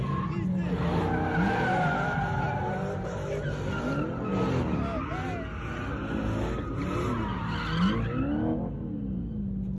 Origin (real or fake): real